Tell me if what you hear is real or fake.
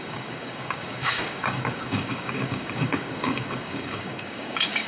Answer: fake